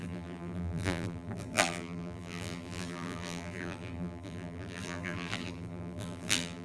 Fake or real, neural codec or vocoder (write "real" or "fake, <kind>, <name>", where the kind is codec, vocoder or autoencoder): fake, vocoder, BigVGAN v2